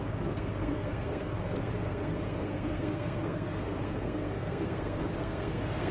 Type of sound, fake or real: fake